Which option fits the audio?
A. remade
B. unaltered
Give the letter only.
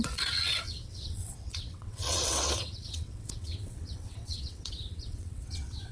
A